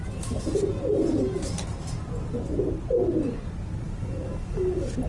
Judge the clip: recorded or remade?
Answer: recorded